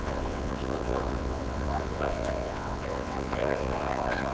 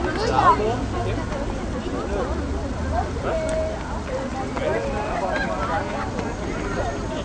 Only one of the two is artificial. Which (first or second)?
first